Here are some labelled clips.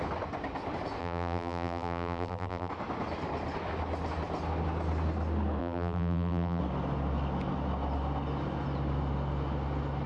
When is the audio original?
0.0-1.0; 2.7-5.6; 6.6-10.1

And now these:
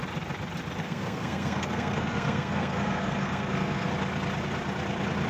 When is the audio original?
0.0-0.8; 3.9-5.3

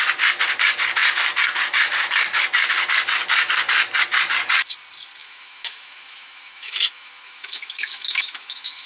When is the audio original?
0.0-5.2

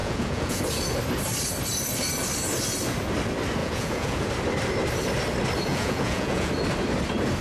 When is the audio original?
0.6-3.6; 4.3-5.7; 6.5-7.4

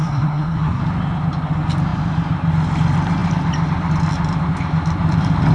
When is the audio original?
0.8-5.5

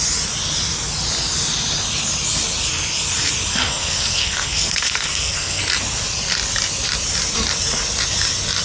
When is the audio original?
0.0-3.5; 5.6-8.6

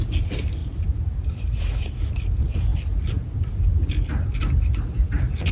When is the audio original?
0.0-5.5

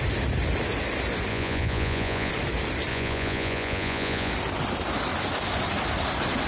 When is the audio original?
0.0-1.3; 2.3-2.9; 4.3-6.5